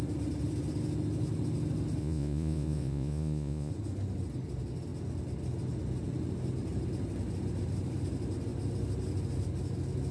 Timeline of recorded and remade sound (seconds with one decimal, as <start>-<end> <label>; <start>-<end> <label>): 0.0-2.0 recorded; 2.0-3.7 remade; 3.7-10.1 recorded